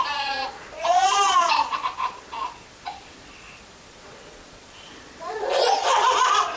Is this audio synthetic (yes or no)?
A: yes